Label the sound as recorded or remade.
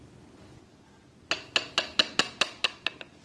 recorded